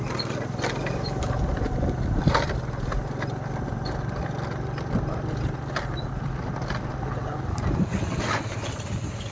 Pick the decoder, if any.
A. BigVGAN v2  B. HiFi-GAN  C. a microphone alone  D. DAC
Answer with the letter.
C